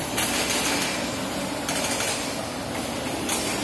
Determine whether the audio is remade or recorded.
recorded